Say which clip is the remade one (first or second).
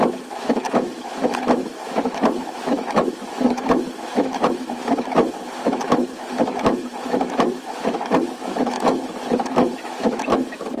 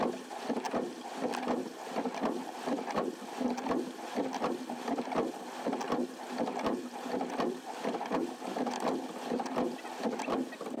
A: first